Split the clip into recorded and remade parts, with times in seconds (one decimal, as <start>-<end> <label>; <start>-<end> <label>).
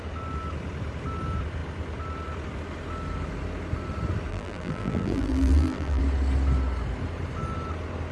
0.0-4.3 recorded; 4.3-6.0 remade; 6.0-8.1 recorded